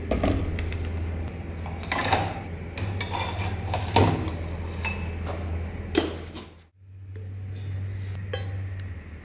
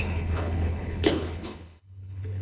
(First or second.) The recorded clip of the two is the first